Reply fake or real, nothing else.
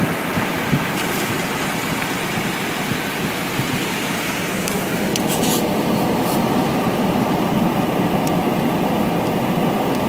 real